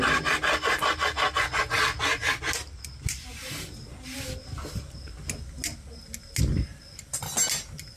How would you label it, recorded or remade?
recorded